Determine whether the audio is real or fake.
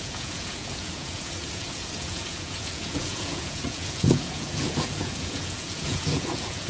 fake